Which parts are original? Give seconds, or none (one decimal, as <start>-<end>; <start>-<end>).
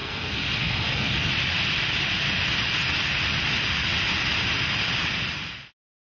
1.3-6.1